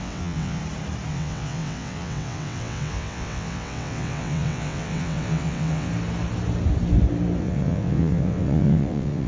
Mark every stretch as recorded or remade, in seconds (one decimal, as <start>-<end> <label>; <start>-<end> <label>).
0.0-0.6 remade; 0.6-1.1 recorded; 1.1-5.9 remade; 5.9-7.4 recorded; 7.4-9.3 remade